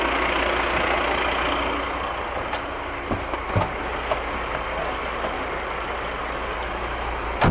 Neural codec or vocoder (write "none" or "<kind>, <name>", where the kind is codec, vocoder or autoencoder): none